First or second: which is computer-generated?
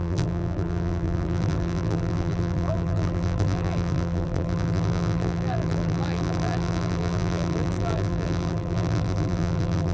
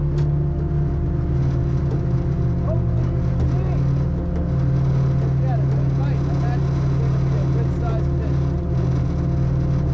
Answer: first